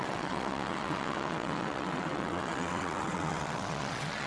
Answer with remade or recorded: remade